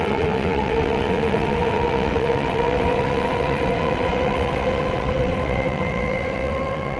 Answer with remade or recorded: remade